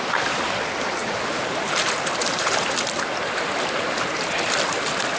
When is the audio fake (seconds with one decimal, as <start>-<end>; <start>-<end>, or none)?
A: none